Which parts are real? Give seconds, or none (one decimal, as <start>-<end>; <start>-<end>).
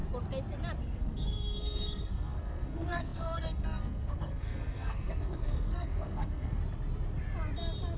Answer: 0.0-0.8; 6.6-8.0